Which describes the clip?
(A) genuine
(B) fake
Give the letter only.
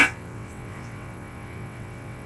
B